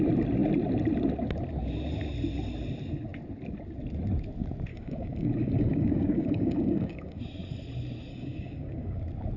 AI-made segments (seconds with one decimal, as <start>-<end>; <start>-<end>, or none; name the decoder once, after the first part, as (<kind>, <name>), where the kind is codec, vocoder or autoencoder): 4.7-7.2 (codec, DAC); 8.1-9.0